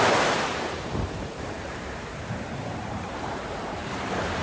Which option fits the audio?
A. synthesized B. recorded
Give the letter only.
A